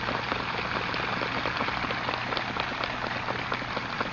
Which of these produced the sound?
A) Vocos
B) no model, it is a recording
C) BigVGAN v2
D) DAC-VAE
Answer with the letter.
B